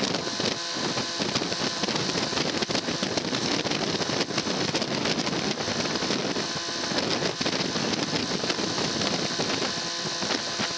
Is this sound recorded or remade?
recorded